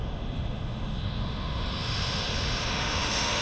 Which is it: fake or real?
fake